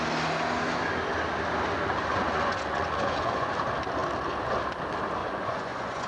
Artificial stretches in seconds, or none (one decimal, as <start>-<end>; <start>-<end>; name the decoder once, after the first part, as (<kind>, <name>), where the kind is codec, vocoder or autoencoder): 2.1-3.5 (vocoder, Vocos); 5.2-6.1